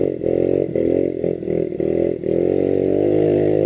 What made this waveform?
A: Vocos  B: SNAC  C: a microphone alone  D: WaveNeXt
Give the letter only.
C